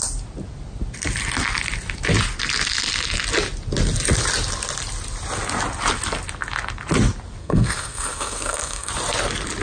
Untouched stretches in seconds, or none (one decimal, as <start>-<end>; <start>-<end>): 0.0-7.4; 8.9-9.6